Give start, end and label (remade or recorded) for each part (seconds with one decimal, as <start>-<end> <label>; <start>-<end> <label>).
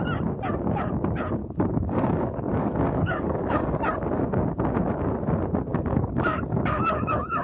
0.0-1.4 recorded; 1.4-3.8 remade; 3.8-5.7 recorded; 5.7-7.4 remade